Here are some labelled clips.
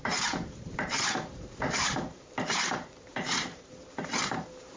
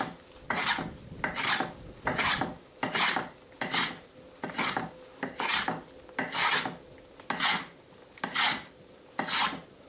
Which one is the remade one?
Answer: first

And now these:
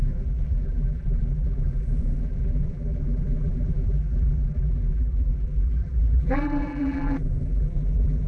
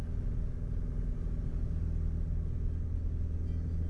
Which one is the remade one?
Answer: first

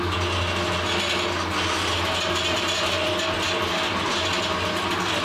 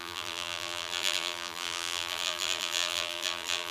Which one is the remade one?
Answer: second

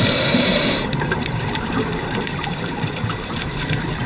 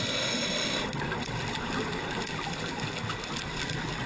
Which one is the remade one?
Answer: first